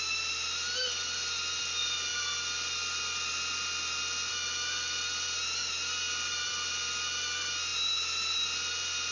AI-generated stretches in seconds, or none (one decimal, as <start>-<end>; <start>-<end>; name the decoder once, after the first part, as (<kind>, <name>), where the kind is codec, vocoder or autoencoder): none